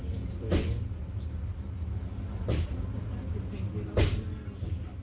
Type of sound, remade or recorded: recorded